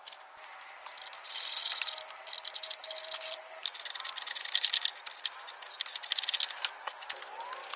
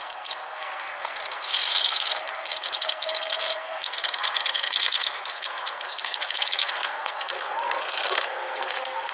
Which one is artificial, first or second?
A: second